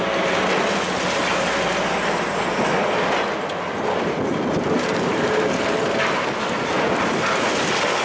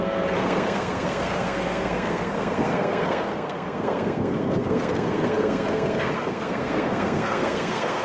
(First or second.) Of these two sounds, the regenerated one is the second